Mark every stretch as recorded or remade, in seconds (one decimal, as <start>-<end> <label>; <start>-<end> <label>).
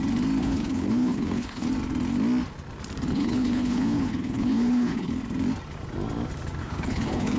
0.0-0.4 recorded; 0.4-1.7 remade; 1.7-3.1 recorded; 3.1-5.1 remade; 5.1-6.6 recorded; 6.6-7.4 remade